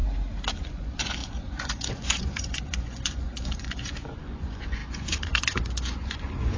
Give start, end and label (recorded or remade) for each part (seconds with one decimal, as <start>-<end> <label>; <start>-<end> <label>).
0.0-0.6 recorded; 0.6-6.6 remade